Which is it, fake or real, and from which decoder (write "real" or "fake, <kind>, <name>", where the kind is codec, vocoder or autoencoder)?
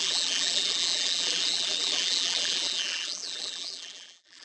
fake, vocoder, BigVGAN v2